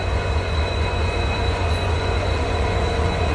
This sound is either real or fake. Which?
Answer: fake